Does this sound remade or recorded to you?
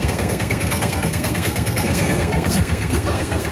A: remade